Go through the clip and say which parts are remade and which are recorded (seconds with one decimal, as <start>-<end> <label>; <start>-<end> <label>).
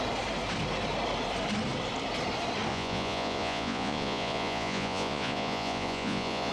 0.0-2.7 recorded; 2.7-6.5 remade